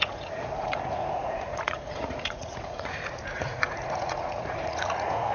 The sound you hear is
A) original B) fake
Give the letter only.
B